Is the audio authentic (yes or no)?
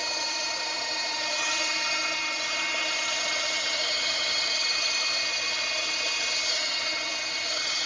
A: no